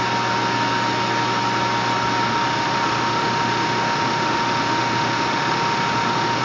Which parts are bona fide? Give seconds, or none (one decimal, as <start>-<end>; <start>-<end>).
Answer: 0.0-2.3